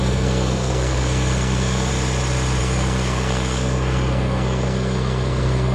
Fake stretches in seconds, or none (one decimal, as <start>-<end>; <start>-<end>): 0.0-1.9; 2.6-5.7